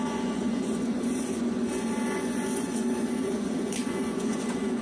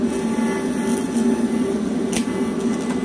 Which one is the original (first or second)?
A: second